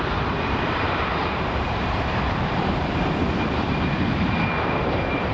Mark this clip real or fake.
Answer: fake